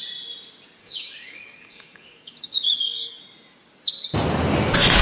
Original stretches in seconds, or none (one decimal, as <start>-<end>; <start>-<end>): 0.0-0.8; 3.2-5.0